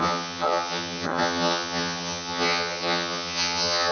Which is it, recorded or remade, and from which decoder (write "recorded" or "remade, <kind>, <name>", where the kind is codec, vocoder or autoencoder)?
remade, vocoder, HiFi-GAN